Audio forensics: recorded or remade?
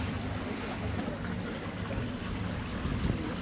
recorded